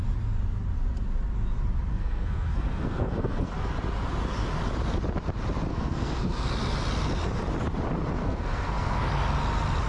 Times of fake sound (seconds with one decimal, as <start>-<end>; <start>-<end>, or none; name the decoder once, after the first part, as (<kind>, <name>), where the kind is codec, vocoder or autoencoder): 1.9-3.5 (codec, SNAC); 5.7-6.5; 8.2-9.1